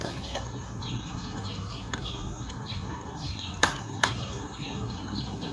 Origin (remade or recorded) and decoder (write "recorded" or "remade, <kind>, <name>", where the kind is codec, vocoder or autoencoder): remade, codec, SNAC